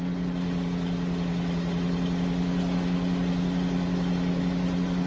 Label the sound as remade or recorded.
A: recorded